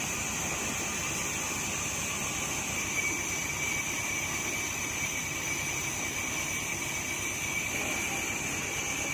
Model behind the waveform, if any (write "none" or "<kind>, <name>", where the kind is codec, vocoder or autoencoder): none